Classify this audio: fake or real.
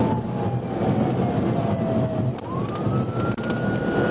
real